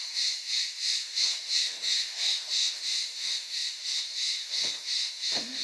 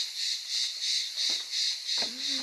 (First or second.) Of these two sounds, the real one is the second